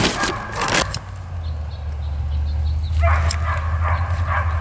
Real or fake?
real